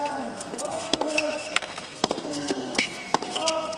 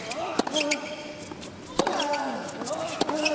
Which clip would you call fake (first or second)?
first